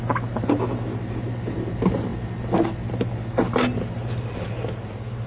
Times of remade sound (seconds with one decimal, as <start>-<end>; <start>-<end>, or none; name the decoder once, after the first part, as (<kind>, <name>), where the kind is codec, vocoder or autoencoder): none